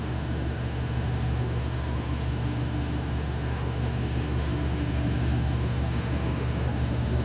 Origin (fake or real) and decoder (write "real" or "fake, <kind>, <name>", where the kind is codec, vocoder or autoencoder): fake, autoencoder, DAC-VAE